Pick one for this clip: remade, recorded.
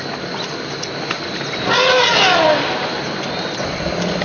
recorded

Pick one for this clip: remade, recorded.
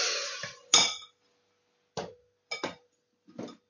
recorded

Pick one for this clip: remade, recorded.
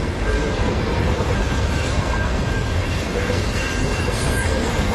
remade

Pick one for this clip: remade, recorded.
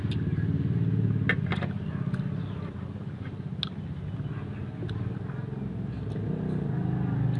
recorded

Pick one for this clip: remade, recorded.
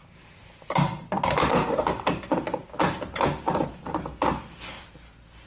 recorded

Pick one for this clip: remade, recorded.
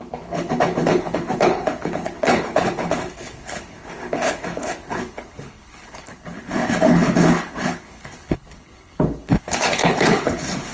remade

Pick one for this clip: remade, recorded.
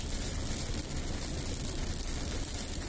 recorded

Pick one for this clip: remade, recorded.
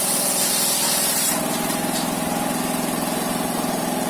remade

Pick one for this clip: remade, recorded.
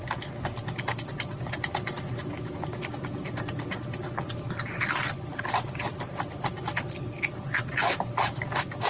recorded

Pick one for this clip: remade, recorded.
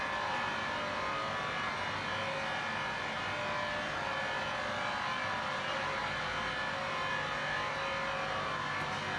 recorded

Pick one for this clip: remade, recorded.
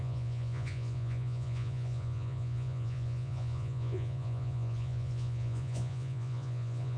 remade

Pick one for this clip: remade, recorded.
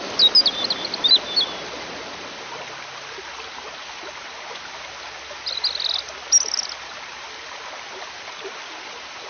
recorded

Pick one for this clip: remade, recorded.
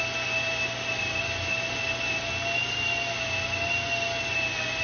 recorded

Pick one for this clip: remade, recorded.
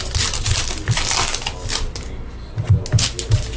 recorded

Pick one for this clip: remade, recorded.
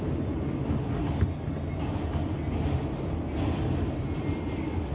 recorded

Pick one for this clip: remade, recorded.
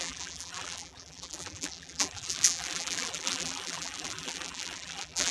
remade